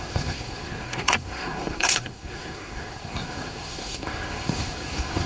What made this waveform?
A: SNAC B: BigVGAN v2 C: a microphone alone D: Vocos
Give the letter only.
A